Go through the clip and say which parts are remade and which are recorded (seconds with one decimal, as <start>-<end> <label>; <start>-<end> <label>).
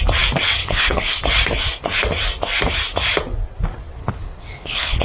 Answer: 0.0-0.6 recorded; 0.6-1.2 remade; 1.2-4.0 recorded; 4.0-5.0 remade